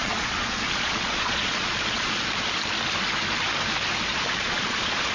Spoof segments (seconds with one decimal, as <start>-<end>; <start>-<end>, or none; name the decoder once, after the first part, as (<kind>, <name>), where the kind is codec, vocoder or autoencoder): 0.0-2.2 (vocoder, Vocos); 4.1-5.1

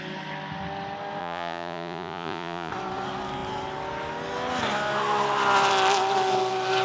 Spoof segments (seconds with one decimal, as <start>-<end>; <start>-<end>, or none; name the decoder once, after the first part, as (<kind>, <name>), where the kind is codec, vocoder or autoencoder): 1.2-2.7 (vocoder, Vocos)

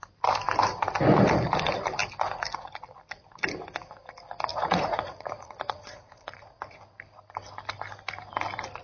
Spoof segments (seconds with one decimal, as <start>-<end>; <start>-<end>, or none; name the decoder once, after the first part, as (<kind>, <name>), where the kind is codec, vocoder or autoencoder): 4.5-6.8 (vocoder, Vocos)

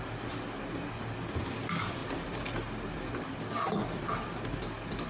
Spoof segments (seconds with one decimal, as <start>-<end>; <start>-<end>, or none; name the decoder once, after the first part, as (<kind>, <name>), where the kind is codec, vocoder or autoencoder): none

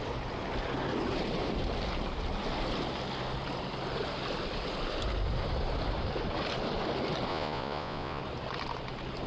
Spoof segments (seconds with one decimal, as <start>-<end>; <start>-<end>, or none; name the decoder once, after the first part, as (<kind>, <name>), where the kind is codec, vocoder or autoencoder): 7.3-8.2 (vocoder, Vocos)

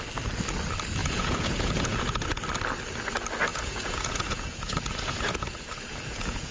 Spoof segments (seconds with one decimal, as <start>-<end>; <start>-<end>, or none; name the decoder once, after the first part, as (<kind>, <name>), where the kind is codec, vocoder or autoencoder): 1.0-2.4 (vocoder, Vocos); 3.5-6.5

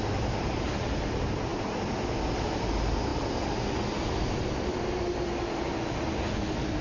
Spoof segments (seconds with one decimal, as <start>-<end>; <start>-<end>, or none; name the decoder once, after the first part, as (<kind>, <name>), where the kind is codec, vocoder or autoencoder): none